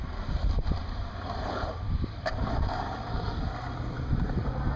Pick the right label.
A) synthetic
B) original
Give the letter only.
A